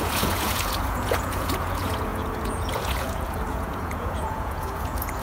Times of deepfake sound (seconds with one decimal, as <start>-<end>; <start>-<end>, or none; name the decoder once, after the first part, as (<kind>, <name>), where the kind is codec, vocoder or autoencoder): 0.0-5.2 (vocoder, Vocos)